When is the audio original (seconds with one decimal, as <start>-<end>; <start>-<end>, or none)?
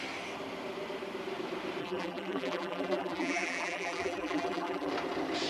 0.0-1.8; 4.9-5.5